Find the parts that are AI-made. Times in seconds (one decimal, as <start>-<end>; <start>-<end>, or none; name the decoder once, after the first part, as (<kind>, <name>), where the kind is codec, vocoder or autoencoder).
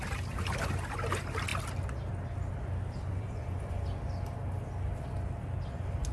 3.1-3.8 (vocoder, Vocos)